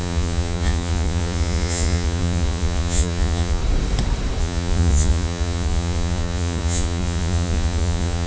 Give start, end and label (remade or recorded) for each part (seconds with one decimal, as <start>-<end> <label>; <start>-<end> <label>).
0.0-3.6 remade; 3.6-4.4 recorded; 4.4-8.3 remade